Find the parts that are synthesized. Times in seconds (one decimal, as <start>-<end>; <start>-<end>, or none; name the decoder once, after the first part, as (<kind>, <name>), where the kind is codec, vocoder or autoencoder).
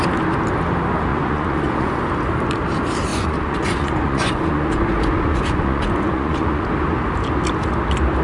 1.1-2.0 (vocoder, Vocos); 3.1-6.7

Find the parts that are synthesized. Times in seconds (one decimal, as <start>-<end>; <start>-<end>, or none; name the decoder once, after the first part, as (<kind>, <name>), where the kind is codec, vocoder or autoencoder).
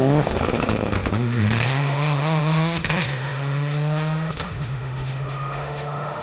0.0-6.2 (autoencoder, DAC-VAE)